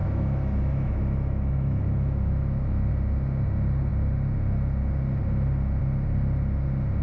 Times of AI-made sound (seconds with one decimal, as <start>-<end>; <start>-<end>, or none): 0.0-2.9

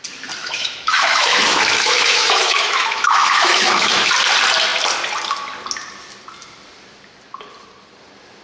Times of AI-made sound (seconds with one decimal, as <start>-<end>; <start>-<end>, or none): 0.4-4.1